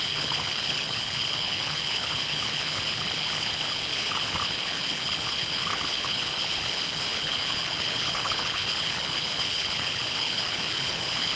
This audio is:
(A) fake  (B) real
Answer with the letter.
A